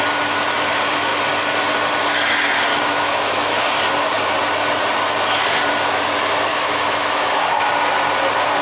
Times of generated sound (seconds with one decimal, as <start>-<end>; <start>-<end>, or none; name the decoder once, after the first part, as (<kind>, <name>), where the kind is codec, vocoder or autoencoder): 2.7-3.8 (autoencoder, DAC-VAE); 6.5-7.7